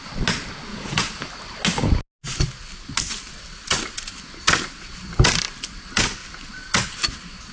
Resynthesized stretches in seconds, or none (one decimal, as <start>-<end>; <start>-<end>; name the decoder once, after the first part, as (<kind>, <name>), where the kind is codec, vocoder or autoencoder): 0.7-1.3 (vocoder, Vocos)